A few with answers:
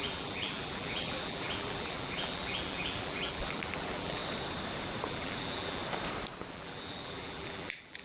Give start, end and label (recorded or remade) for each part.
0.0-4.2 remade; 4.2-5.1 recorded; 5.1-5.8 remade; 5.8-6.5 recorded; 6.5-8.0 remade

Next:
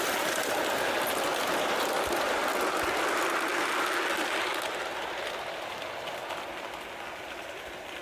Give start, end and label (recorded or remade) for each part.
0.0-1.3 recorded; 1.3-2.4 remade; 2.4-8.0 recorded

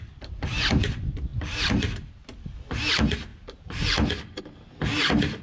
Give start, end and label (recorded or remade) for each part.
0.0-1.3 recorded; 1.3-2.2 remade; 2.2-5.4 recorded

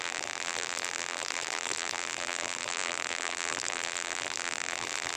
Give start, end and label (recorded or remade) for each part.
0.0-5.2 remade

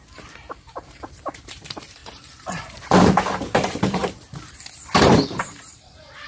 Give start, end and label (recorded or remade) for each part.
0.0-4.0 remade; 4.0-5.0 recorded; 5.0-6.3 remade

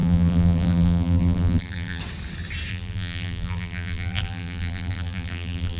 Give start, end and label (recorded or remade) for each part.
0.0-2.0 remade; 2.0-2.7 recorded; 2.7-5.8 remade

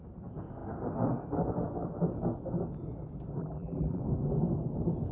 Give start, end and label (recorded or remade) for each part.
0.0-3.4 recorded; 3.4-4.0 remade; 4.0-5.1 recorded

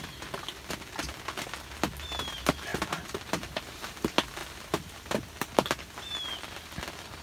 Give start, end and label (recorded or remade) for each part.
0.0-4.4 recorded; 4.4-5.3 remade; 5.3-7.2 recorded